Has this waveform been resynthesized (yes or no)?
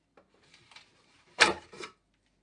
yes